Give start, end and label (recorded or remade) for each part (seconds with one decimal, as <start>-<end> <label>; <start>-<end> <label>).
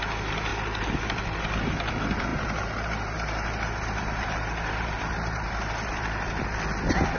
0.0-2.3 recorded; 2.3-6.6 remade; 6.6-7.2 recorded